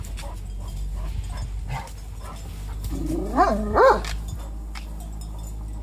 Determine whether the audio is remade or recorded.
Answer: recorded